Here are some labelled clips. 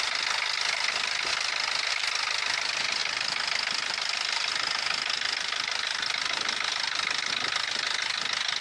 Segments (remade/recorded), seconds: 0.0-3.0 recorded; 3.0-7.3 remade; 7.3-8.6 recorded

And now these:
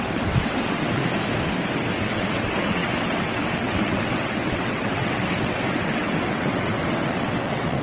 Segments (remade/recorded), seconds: 0.0-1.0 remade; 1.0-2.0 recorded; 2.0-7.8 remade

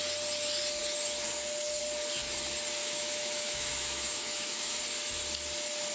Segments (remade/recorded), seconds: 0.0-2.8 recorded; 2.8-4.8 remade; 4.8-5.9 recorded

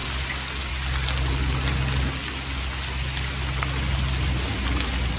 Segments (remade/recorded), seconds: 0.0-5.2 recorded

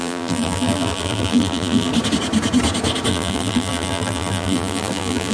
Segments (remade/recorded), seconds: 0.0-1.9 remade; 1.9-3.1 recorded; 3.1-5.3 remade

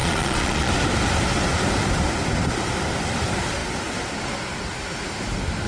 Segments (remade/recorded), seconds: 0.0-0.7 remade; 0.7-5.7 recorded